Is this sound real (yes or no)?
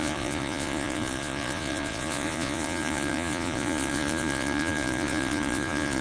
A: no